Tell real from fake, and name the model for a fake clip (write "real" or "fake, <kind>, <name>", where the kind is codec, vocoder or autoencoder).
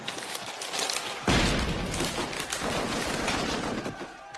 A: real